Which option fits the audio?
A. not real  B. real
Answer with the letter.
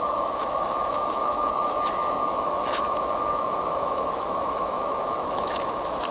A